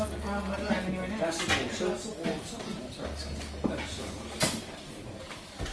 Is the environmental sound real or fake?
real